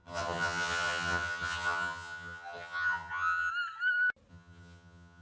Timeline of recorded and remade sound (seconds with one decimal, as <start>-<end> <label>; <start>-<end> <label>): 0.0-3.5 remade; 3.5-4.3 recorded; 4.3-5.2 remade